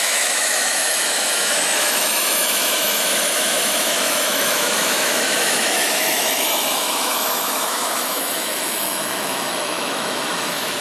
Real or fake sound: fake